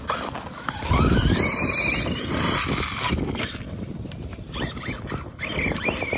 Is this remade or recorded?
recorded